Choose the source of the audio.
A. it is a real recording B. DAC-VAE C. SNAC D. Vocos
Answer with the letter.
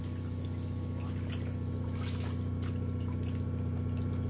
A